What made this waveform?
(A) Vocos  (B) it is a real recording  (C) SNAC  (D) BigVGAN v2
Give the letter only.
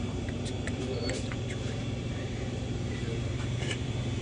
D